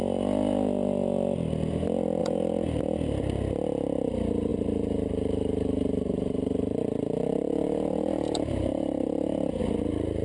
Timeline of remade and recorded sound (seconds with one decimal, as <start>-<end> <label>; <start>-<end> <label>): 0.0-2.2 recorded; 2.2-2.8 remade; 2.8-4.5 recorded; 4.5-9.6 remade; 9.6-10.2 recorded